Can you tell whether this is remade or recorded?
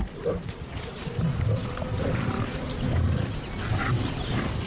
recorded